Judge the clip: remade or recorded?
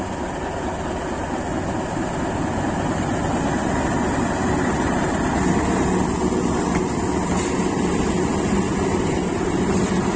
recorded